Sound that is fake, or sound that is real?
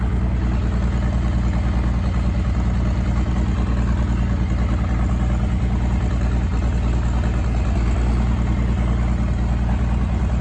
real